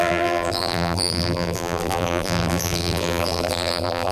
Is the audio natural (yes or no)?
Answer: no